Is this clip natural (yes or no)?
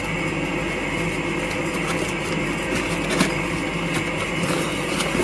yes